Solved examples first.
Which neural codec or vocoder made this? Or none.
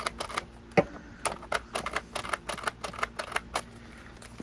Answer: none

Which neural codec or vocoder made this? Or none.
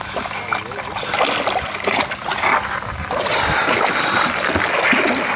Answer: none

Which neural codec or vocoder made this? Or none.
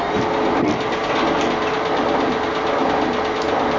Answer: none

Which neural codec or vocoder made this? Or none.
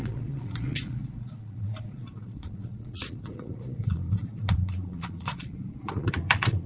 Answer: vocoder, Vocos